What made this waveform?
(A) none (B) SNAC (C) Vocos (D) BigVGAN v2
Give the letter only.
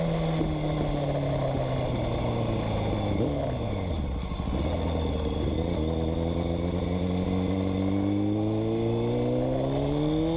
A